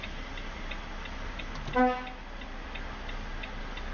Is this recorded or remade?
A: recorded